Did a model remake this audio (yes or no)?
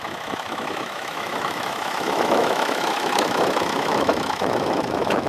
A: yes